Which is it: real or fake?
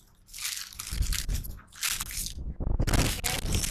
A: real